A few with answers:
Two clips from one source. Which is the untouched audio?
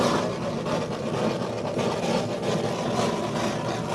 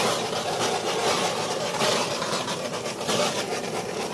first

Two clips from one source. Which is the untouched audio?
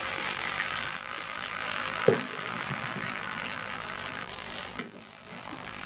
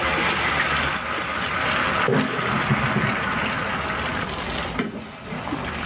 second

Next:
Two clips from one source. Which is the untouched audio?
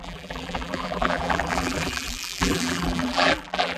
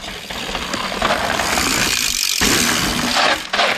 second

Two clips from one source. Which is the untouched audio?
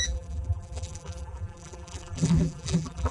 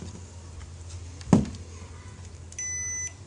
second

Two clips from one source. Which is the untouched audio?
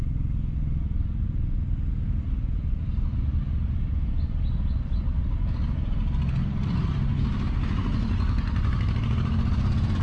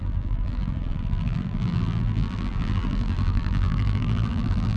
first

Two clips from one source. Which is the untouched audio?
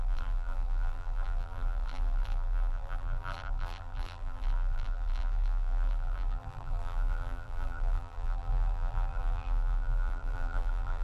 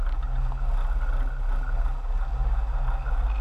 second